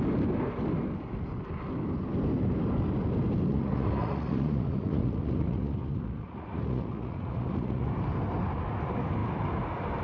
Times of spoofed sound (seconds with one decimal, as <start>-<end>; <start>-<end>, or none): 3.5-7.9